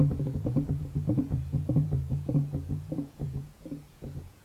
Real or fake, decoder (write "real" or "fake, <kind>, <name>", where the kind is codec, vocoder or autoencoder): fake, vocoder, Vocos